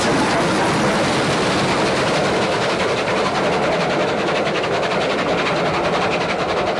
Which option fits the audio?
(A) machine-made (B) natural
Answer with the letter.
B